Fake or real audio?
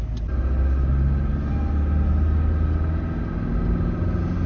real